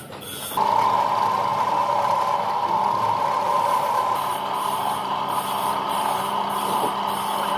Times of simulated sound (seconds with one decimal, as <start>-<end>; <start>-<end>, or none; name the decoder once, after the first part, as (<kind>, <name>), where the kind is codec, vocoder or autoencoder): 5.0-6.9 (vocoder, BigVGAN v2)